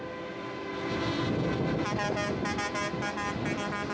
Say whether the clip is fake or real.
real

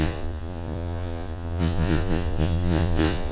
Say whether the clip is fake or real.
fake